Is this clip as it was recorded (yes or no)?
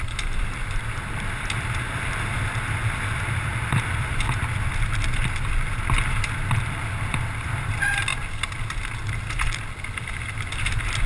yes